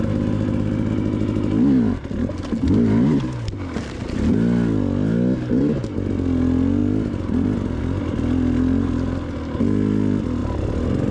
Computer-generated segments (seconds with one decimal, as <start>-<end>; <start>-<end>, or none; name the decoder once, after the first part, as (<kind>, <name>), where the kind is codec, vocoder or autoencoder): none